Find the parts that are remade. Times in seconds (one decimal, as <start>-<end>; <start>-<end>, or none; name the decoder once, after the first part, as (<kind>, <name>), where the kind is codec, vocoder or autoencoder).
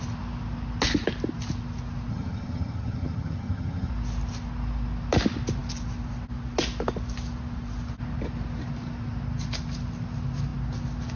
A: 2.1-3.9 (vocoder, HiFi-GAN)